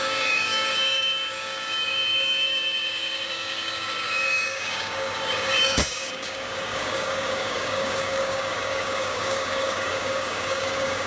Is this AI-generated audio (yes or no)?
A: yes